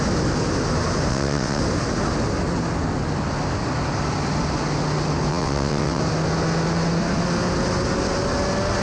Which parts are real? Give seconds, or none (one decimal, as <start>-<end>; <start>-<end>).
0.0-1.1; 1.6-5.3; 6.0-8.8